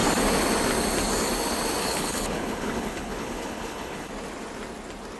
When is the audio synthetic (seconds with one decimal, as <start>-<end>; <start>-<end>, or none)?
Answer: 1.8-4.1